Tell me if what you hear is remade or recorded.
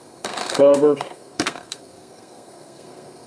remade